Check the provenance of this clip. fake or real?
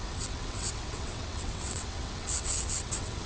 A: fake